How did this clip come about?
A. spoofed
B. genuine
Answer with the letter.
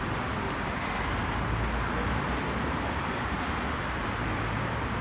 B